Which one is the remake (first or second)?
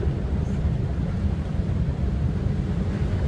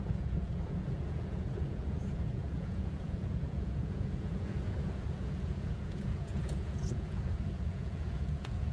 second